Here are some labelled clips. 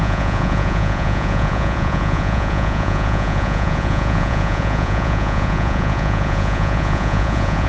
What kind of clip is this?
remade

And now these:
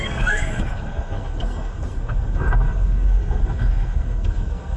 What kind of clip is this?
remade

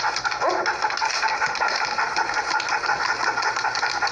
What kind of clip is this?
recorded